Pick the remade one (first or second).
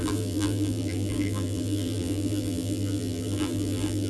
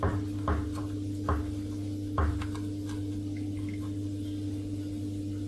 first